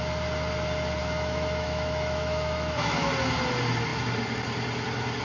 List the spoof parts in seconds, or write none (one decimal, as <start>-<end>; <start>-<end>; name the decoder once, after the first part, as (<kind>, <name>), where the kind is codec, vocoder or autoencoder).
1.0-3.1 (autoencoder, DAC-VAE)